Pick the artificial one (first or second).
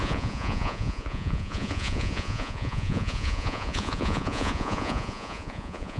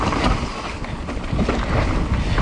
first